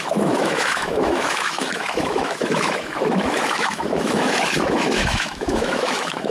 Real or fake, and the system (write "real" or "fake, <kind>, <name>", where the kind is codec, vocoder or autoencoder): fake, autoencoder, DAC-VAE